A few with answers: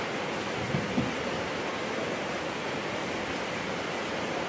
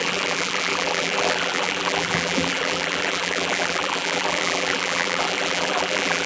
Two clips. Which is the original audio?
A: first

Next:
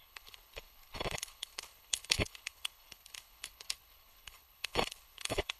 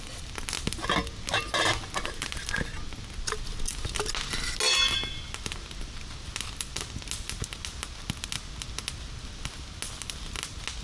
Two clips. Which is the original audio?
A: second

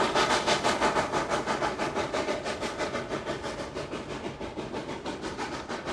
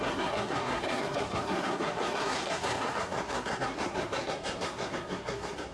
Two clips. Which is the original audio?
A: first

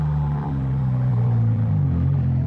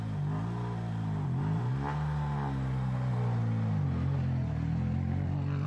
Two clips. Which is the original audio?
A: second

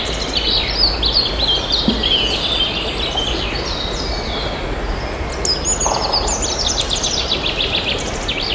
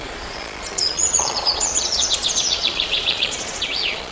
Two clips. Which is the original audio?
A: first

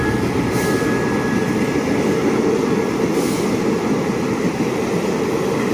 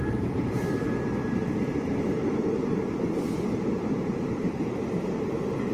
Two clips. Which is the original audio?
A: first